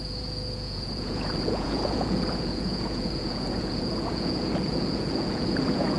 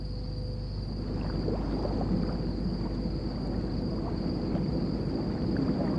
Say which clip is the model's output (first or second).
first